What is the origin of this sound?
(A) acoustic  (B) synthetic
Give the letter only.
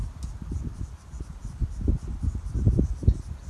A